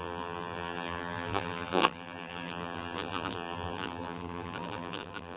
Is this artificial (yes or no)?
yes